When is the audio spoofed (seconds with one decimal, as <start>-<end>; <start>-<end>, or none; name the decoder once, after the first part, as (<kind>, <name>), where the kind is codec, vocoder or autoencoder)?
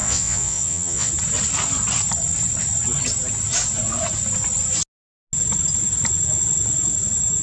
0.0-1.1 (vocoder, Vocos)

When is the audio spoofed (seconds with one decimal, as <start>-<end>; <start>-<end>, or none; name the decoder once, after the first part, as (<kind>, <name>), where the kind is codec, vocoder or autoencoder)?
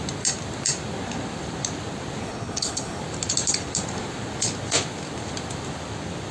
2.2-3.0 (codec, HILCodec)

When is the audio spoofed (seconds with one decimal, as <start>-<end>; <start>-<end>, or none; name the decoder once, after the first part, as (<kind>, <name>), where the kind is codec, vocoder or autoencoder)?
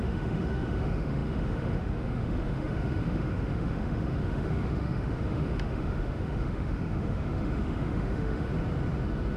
0.0-8.5 (autoencoder, DAC-VAE)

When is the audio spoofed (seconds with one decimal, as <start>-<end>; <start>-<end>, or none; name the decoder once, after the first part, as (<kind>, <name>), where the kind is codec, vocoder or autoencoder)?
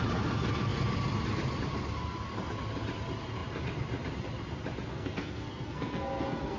4.9-6.6 (codec, SNAC)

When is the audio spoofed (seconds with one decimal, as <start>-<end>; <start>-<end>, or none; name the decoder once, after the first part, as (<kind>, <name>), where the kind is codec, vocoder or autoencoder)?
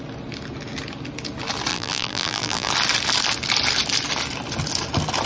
1.7-2.7 (vocoder, BigVGAN v2)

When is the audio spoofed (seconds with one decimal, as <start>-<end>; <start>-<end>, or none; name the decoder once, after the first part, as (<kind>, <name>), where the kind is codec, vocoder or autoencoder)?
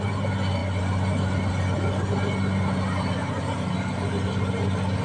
none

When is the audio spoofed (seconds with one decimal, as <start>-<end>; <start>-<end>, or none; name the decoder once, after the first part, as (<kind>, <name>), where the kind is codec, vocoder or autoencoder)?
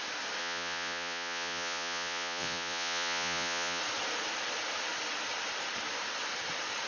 0.4-3.8 (vocoder, Vocos)